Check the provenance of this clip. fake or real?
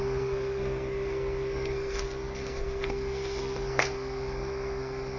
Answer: fake